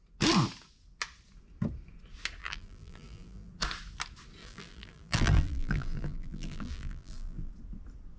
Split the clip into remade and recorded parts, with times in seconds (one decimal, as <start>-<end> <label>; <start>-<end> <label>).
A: 0.0-2.4 recorded; 2.4-3.5 remade; 3.5-4.4 recorded; 4.4-7.5 remade; 7.5-8.2 recorded